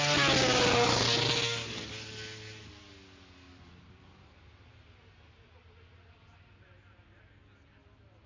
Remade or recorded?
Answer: recorded